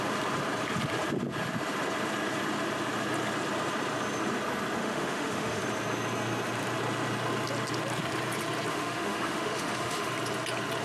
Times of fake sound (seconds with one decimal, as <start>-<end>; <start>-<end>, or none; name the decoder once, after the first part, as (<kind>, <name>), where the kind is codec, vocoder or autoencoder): 4.8-5.6 (autoencoder, DAC-VAE); 8.7-10.1